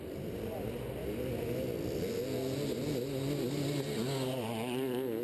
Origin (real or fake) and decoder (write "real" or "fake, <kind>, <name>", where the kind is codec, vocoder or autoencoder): real